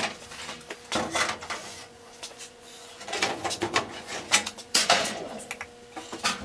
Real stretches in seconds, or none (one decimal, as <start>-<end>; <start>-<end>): 0.0-1.6; 5.4-6.4